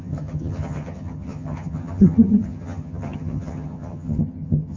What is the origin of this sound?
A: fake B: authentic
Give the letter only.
A